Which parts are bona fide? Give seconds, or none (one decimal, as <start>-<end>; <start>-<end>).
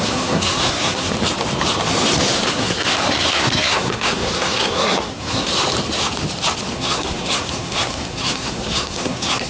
1.1-2.5; 5.5-6.7